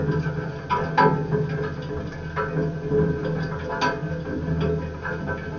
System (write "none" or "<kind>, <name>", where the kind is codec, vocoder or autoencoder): none